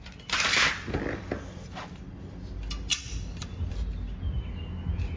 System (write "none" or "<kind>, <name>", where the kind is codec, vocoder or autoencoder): none